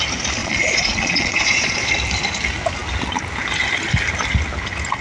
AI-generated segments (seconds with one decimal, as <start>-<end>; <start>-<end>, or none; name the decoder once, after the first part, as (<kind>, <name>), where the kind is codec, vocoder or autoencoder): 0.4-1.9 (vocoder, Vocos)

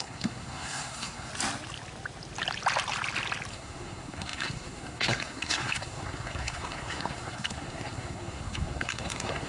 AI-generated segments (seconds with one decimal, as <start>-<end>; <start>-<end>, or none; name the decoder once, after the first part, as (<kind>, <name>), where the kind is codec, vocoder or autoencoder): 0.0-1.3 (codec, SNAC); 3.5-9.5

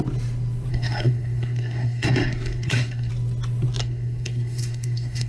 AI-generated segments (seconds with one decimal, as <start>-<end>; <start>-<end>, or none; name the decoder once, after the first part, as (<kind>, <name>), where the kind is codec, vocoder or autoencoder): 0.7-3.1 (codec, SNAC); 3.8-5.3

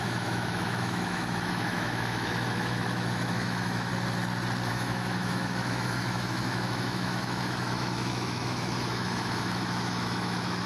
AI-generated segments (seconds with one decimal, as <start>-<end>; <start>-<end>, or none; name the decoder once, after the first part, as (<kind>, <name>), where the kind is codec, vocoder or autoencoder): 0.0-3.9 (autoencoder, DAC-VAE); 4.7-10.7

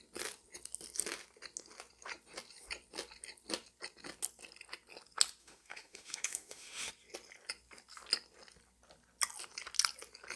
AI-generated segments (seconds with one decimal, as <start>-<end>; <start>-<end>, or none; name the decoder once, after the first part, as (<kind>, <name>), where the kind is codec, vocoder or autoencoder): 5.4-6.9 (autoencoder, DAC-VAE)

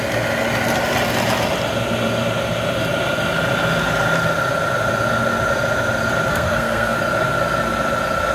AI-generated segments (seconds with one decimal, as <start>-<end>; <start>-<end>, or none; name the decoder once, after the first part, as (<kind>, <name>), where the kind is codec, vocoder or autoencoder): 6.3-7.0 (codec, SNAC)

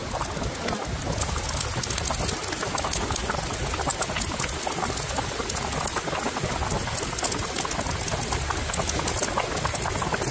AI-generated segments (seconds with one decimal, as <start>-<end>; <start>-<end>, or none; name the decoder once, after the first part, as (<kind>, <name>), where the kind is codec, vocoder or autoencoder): none